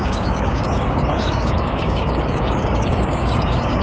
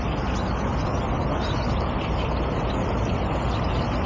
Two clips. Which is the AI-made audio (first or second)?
first